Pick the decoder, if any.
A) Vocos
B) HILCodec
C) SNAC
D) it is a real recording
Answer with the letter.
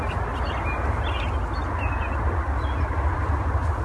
D